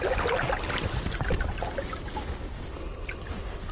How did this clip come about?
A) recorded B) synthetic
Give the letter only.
A